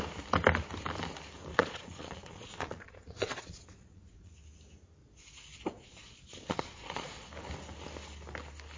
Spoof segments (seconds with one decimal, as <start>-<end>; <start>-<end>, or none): 1.5-4.3; 5.0-7.3